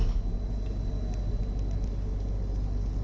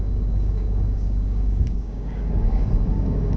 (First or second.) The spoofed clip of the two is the second